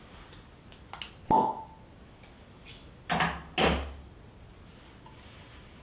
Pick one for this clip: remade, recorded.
recorded